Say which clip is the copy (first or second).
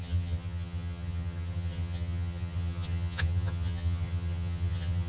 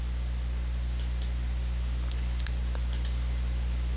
first